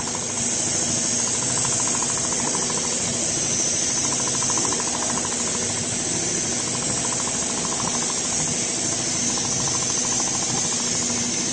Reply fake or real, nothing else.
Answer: real